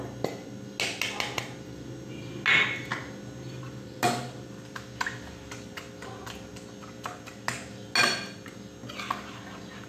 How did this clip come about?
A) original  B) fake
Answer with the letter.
A